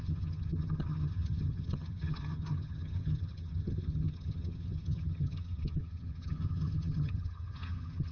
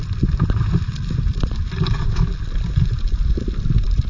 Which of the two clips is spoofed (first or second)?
first